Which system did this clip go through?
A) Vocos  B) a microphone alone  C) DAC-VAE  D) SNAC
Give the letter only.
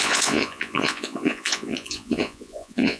A